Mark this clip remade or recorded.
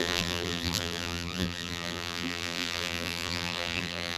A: remade